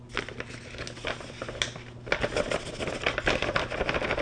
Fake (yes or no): no